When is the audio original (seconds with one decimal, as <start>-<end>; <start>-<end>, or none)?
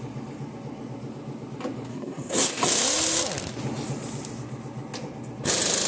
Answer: 0.0-1.9; 2.5-5.9